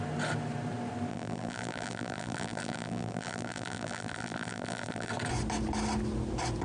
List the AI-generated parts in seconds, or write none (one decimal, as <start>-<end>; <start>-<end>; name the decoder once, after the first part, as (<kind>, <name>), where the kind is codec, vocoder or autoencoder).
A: 1.1-5.1 (vocoder, BigVGAN v2)